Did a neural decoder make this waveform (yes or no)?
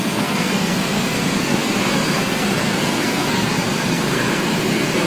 yes